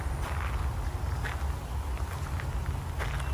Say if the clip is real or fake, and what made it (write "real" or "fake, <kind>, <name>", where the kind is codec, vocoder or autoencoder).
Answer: real